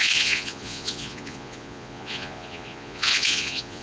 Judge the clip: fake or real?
fake